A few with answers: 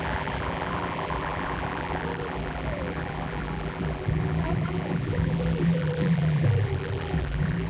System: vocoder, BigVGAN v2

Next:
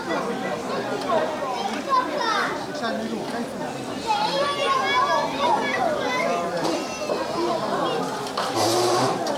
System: none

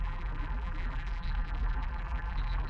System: vocoder, BigVGAN v2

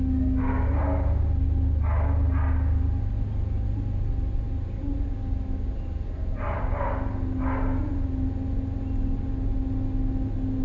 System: none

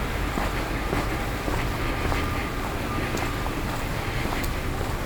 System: none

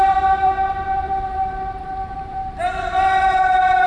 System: vocoder, BigVGAN v2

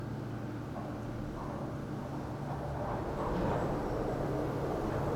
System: none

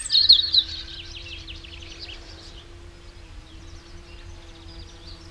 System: none